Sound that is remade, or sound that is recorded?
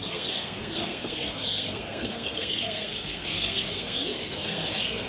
remade